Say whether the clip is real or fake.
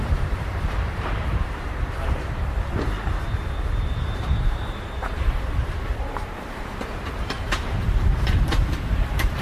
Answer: fake